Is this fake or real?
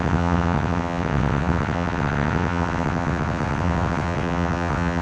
fake